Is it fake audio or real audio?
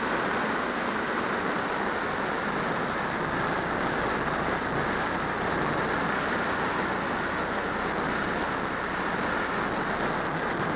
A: real